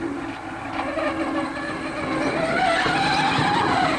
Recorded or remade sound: recorded